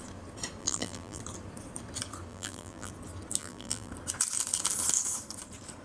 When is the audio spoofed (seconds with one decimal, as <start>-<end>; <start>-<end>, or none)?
0.6-1.2; 2.3-2.9; 3.4-3.9